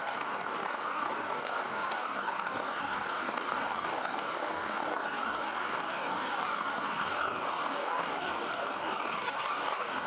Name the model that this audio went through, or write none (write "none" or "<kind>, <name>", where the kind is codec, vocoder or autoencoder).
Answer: codec, DAC